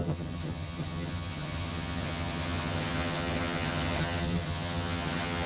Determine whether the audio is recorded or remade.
remade